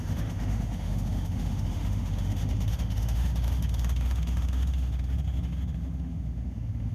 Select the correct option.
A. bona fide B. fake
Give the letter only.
B